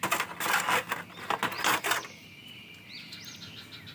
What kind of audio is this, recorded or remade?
recorded